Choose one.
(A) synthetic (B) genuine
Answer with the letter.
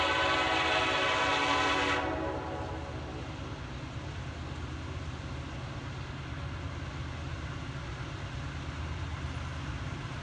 B